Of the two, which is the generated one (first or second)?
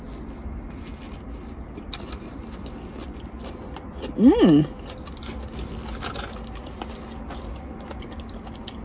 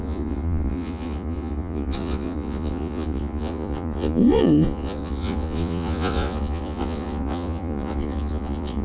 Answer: second